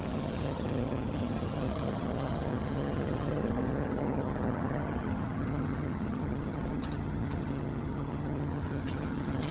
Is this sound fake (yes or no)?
yes